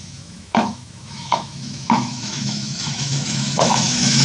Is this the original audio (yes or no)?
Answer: no